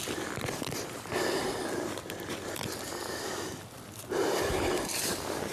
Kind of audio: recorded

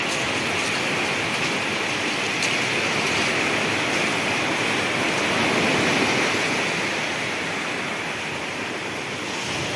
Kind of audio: recorded